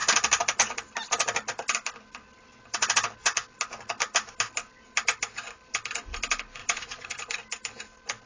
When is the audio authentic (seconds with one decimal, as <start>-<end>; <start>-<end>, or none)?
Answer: 0.0-6.6; 7.2-8.3